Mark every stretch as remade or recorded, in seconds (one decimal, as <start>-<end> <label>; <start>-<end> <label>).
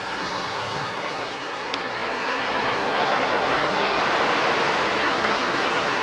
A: 0.0-4.0 remade; 4.0-5.0 recorded; 5.0-6.0 remade